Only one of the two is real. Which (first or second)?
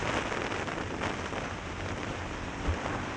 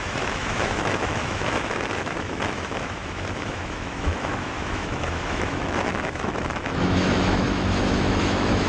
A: first